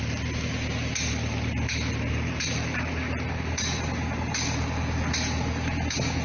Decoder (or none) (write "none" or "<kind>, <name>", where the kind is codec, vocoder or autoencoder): none